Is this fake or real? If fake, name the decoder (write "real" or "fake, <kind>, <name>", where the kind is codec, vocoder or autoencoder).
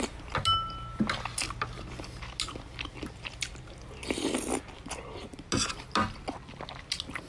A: real